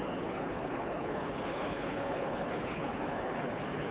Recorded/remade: remade